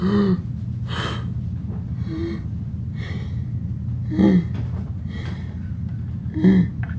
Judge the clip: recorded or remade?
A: recorded